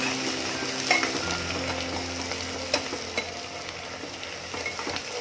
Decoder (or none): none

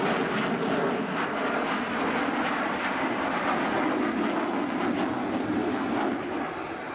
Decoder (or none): none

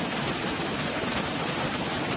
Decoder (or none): none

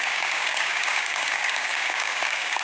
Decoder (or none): codec, DAC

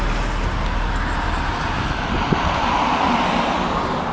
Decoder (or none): none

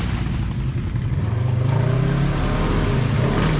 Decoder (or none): none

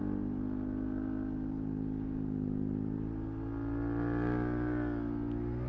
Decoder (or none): none